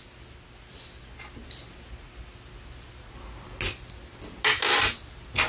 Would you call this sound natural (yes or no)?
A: yes